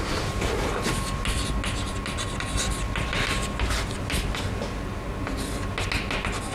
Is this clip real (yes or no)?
yes